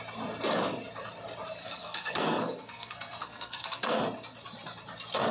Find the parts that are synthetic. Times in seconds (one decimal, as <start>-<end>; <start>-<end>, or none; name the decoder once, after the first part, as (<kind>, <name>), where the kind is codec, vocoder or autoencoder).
1.6-4.0 (codec, SNAC)